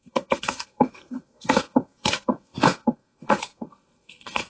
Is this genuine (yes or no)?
no